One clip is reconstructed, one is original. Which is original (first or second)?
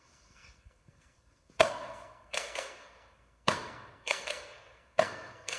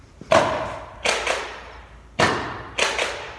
second